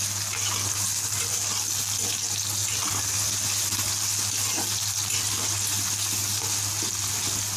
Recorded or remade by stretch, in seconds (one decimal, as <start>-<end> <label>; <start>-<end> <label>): 0.0-7.6 recorded

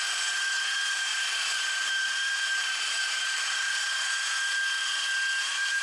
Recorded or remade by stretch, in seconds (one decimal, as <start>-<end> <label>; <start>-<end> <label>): 0.0-1.1 recorded; 1.1-3.7 remade; 3.7-4.8 recorded; 4.8-5.8 remade

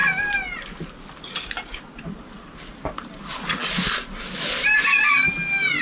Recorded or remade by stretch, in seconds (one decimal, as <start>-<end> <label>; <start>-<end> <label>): 0.0-5.8 recorded

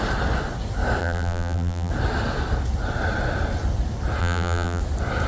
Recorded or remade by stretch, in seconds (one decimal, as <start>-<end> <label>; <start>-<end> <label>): 0.0-1.0 recorded; 1.0-1.9 remade; 1.9-4.2 recorded; 4.2-4.8 remade; 4.8-5.3 recorded

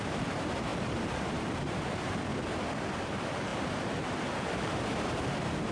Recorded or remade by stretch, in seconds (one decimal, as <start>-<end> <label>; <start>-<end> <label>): 0.0-2.3 remade; 2.3-3.0 recorded; 3.0-5.7 remade

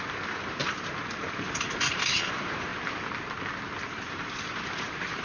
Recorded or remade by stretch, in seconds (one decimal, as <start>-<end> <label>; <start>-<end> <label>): 0.0-2.7 remade; 2.7-3.8 recorded; 3.8-5.2 remade